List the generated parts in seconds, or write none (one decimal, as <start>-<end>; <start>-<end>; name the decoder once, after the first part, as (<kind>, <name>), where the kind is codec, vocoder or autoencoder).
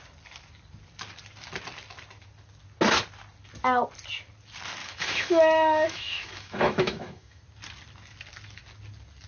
4.8-7.4 (autoencoder, DAC-VAE)